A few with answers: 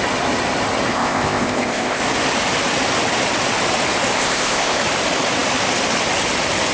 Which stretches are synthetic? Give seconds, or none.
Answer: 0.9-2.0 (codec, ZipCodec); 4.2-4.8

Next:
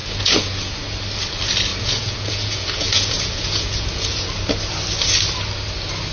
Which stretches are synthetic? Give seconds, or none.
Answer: 0.0-0.8 (vocoder, Vocos); 1.7-4.3

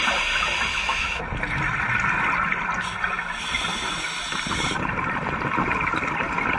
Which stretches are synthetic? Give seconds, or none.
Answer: 0.7-1.2 (autoencoder, DAC-VAE)

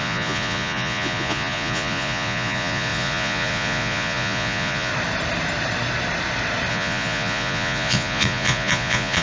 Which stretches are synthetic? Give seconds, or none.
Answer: 0.0-4.9 (vocoder, Vocos); 6.7-9.2

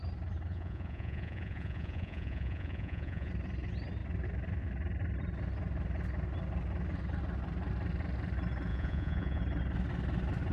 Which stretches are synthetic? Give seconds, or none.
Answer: 0.5-3.3 (vocoder, Vocos); 8.7-9.4

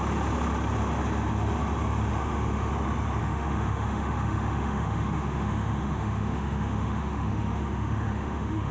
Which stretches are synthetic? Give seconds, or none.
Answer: 2.1-2.7 (autoencoder, DAC-VAE); 3.2-8.7

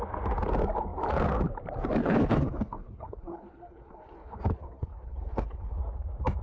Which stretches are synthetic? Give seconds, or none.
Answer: 2.0-5.8 (codec, HILCodec)